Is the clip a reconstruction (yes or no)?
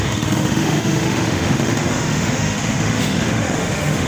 yes